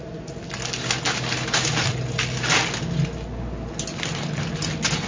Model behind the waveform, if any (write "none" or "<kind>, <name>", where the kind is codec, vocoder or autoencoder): none